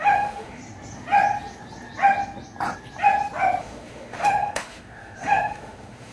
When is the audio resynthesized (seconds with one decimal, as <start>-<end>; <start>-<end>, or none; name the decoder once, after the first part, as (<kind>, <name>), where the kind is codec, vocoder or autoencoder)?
0.0-0.6 (autoencoder, DAC-VAE); 3.6-6.1

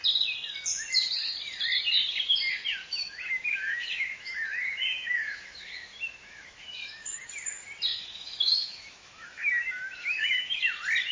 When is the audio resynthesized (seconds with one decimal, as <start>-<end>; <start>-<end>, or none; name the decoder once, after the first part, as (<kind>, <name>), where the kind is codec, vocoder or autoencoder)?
2.8-7.3 (autoencoder, DAC-VAE); 7.9-10.6

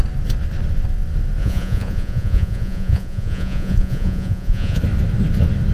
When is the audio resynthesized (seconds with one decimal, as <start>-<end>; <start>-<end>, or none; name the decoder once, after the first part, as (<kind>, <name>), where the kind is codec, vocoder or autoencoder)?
1.4-4.8 (vocoder, Vocos)

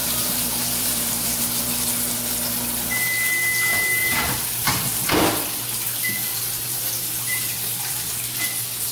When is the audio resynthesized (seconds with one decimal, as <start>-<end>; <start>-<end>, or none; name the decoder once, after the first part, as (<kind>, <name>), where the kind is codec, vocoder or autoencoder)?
0.0-1.4 (vocoder, BigVGAN v2); 4.0-5.2; 6.3-8.4

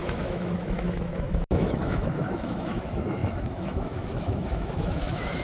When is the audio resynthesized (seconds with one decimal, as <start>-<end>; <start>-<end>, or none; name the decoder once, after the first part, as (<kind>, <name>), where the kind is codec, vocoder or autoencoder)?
0.0-5.4 (autoencoder, DAC-VAE)